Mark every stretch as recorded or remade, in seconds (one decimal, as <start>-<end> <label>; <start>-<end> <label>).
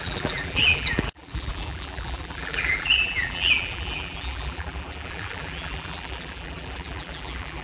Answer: 0.0-7.6 remade